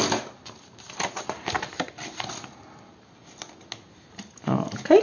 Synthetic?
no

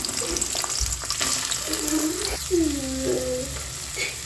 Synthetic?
no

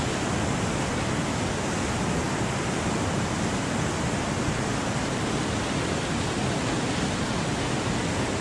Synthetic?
no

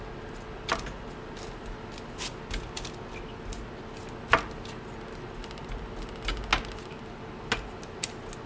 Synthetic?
no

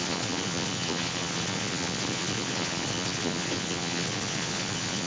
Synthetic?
yes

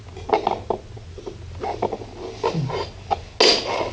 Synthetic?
no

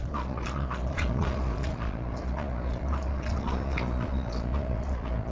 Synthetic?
yes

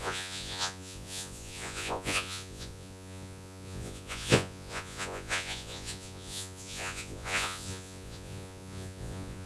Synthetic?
yes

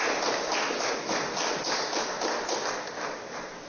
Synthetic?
no